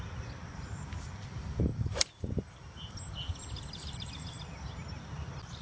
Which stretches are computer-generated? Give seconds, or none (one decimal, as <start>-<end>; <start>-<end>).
1.7-3.0; 3.4-4.4